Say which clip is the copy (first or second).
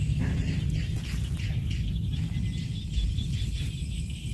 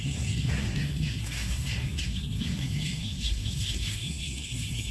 second